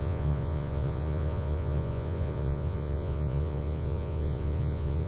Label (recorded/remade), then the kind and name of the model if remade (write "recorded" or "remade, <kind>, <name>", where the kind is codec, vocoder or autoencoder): remade, vocoder, Vocos